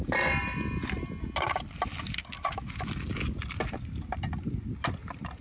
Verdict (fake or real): real